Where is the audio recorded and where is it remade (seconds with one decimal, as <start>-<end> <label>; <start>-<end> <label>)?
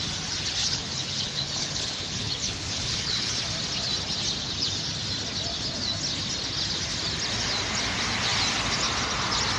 0.0-0.6 recorded; 0.6-3.3 remade; 3.3-9.6 recorded